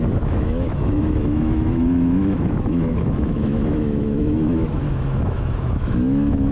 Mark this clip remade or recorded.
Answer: remade